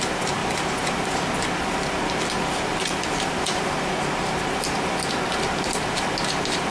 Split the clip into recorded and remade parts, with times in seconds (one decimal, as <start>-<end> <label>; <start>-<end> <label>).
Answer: 0.0-6.7 recorded

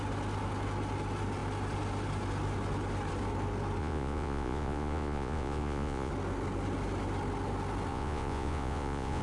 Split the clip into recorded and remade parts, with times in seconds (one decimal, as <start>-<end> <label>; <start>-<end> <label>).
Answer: 0.0-3.8 recorded; 3.8-6.1 remade; 6.1-7.9 recorded; 7.9-9.2 remade